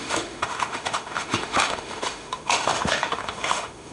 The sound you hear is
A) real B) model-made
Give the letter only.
B